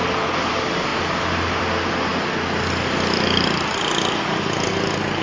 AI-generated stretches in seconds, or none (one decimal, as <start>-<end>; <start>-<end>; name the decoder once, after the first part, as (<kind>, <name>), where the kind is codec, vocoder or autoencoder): none